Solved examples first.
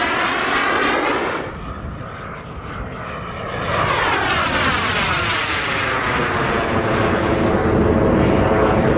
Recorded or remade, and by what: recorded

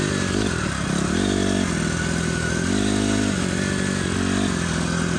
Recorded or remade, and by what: recorded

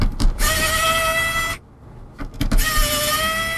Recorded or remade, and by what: recorded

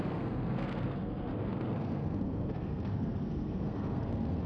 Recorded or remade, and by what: remade, codec, SNAC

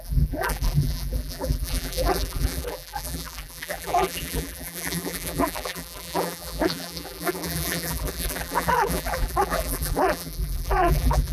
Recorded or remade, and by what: remade, vocoder, BigVGAN v2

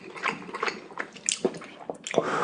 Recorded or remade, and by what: recorded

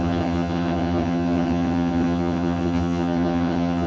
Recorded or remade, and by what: remade, vocoder, HiFi-GAN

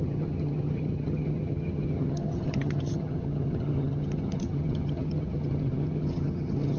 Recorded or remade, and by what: remade, vocoder, HiFi-GAN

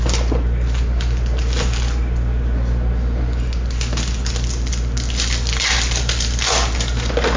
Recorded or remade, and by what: recorded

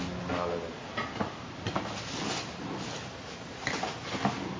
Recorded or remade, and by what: recorded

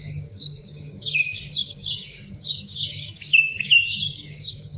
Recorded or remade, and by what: remade, codec, DAC